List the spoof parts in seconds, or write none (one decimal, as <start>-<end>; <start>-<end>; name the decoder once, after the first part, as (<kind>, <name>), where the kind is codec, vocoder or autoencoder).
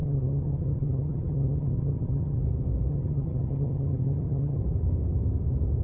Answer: 0.0-2.4 (vocoder, HiFi-GAN); 2.9-4.6